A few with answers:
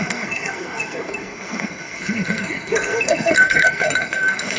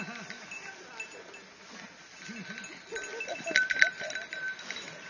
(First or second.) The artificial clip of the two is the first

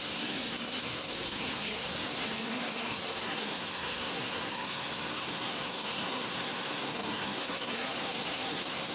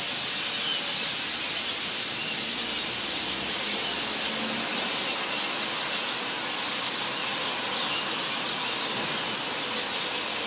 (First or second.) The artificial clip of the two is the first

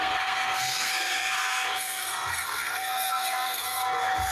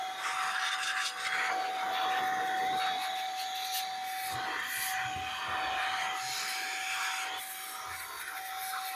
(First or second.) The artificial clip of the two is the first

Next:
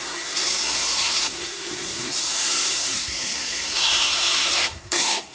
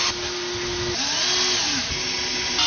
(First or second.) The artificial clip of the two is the first